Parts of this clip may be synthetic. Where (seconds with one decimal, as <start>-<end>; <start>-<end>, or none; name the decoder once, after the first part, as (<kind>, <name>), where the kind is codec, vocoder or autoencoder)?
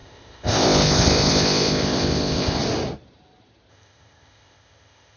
0.0-2.6 (codec, ZipCodec); 3.7-5.2